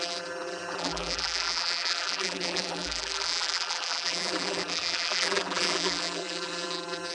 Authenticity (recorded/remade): remade